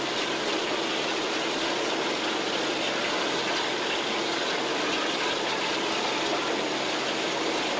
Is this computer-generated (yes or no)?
no